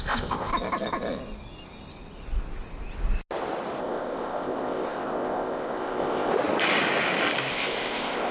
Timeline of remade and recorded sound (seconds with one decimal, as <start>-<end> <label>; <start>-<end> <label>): 0.0-0.5 remade; 0.5-3.8 recorded; 3.8-6.3 remade; 6.3-7.5 recorded; 7.5-8.3 remade